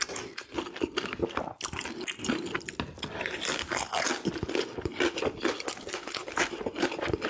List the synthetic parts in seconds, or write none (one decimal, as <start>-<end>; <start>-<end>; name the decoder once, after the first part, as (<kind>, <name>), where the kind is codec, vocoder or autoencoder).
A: 6.2-7.3 (vocoder, BigVGAN v2)